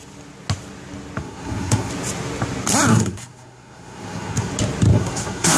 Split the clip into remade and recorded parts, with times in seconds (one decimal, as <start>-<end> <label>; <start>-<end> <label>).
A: 0.0-1.2 recorded; 1.2-1.9 remade; 1.9-2.9 recorded; 2.9-4.5 remade; 4.5-4.9 recorded; 4.9-5.6 remade